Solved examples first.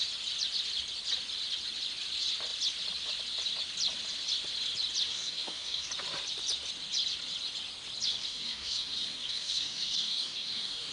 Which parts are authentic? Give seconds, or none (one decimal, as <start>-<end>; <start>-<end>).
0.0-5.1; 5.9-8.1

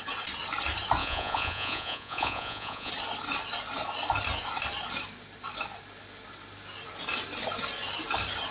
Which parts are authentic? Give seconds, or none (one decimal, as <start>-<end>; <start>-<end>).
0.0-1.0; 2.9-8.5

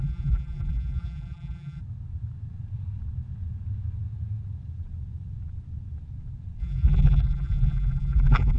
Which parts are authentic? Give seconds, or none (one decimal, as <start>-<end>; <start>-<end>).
1.8-6.6